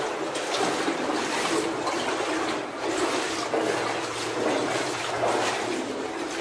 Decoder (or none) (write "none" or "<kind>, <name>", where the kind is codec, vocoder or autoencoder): none